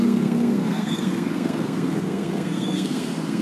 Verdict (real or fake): fake